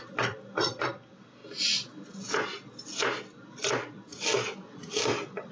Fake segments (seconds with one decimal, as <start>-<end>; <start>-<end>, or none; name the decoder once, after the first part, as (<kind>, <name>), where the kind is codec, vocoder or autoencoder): 0.0-1.4 (vocoder, BigVGAN v2); 3.4-5.5